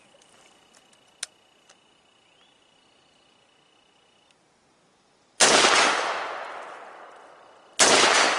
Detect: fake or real real